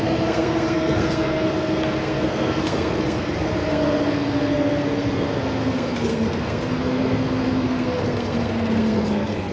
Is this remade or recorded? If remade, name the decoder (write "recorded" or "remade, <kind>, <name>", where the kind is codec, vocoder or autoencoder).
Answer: remade, codec, SNAC